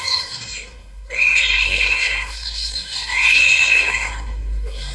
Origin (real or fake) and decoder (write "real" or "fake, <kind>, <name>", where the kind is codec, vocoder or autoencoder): fake, codec, SNAC